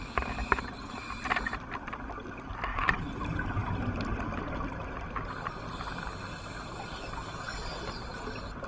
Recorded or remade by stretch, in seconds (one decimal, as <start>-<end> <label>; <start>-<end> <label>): 0.0-2.7 recorded; 2.7-3.2 remade; 3.2-8.7 recorded